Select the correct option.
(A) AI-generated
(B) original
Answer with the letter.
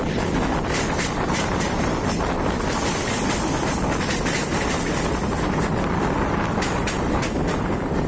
B